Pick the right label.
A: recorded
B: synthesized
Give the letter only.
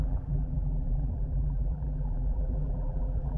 B